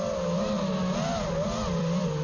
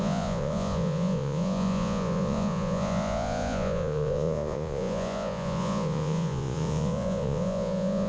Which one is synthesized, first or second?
second